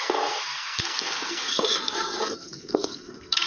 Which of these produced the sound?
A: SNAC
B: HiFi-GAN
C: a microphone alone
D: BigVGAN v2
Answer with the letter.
A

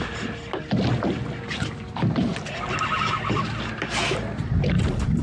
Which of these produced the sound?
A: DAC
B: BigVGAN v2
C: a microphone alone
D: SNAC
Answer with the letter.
C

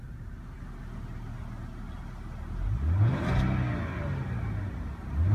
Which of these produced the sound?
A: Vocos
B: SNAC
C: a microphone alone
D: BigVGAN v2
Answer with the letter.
C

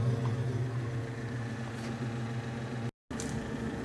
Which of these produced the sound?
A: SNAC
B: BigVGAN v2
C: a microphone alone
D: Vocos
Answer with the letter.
C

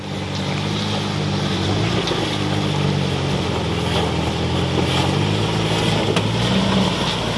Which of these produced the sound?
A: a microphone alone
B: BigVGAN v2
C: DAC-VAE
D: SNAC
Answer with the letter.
A